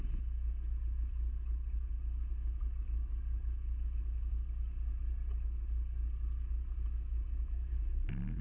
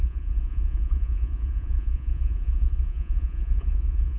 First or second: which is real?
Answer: first